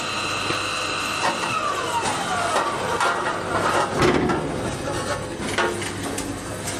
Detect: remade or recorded recorded